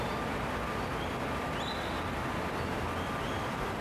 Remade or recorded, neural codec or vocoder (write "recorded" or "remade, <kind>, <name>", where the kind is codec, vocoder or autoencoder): recorded